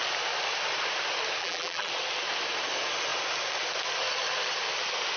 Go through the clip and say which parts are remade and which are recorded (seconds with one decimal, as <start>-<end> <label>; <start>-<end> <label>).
0.0-1.4 recorded; 1.4-1.9 remade; 1.9-5.2 recorded